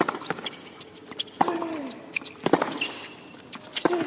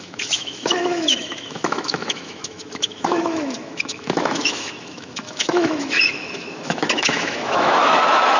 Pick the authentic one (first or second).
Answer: first